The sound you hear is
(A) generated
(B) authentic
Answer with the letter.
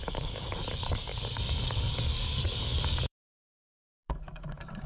A